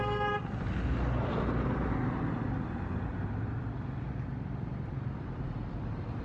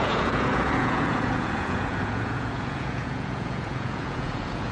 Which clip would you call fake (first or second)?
second